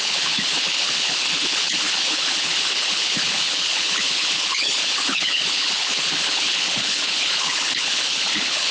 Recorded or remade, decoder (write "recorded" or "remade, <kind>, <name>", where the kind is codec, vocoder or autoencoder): remade, codec, HILCodec